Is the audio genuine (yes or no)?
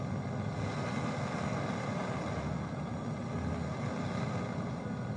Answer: yes